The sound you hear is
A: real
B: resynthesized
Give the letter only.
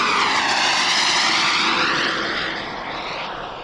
A